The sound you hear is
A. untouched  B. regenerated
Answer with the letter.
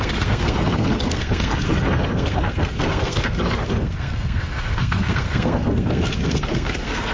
B